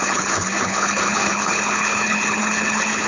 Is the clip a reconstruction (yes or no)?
yes